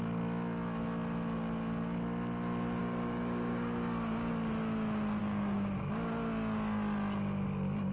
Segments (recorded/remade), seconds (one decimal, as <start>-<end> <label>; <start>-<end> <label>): 0.0-2.8 recorded; 2.8-4.3 remade; 4.3-5.2 recorded; 5.2-5.8 remade; 5.8-7.9 recorded